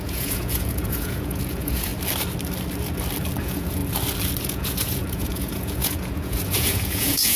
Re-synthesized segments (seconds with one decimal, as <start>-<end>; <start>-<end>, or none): 0.0-1.9; 3.4-3.8; 4.4-7.4